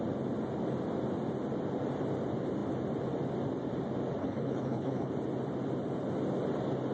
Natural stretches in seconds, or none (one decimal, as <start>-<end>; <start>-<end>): 0.0-4.2; 5.1-6.9